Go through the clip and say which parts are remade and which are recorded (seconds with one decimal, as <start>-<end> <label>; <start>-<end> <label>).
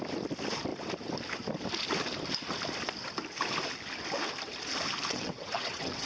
0.0-5.1 recorded; 5.1-6.1 remade